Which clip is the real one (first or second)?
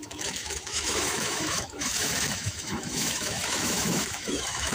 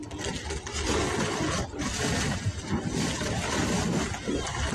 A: second